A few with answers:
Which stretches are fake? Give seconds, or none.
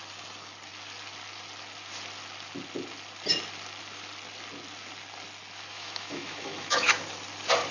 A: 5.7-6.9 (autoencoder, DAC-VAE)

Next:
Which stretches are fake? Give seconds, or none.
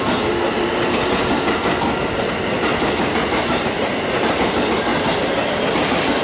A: none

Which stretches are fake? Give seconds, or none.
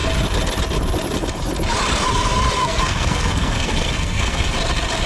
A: 2.6-4.5 (codec, SNAC)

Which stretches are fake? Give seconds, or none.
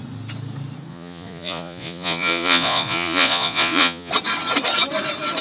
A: 0.9-4.1 (vocoder, Vocos)